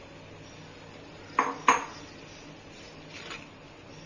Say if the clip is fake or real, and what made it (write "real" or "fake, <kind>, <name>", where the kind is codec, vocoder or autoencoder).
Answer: real